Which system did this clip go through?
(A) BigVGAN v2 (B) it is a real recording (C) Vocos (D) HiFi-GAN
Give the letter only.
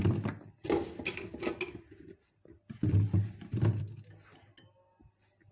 B